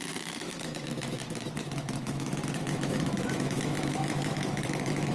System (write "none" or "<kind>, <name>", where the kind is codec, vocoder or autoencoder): autoencoder, DAC-VAE